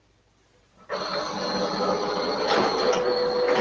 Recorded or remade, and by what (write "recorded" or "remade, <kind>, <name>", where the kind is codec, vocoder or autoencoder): recorded